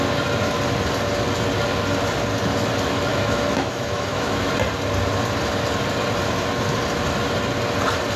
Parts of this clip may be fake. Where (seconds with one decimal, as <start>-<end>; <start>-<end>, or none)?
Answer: 3.1-4.5